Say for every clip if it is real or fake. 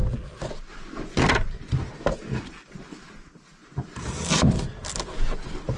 real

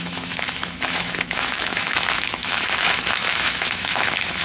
fake